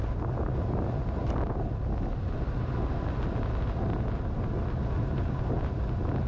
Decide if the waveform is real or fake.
real